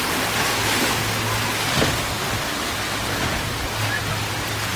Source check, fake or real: real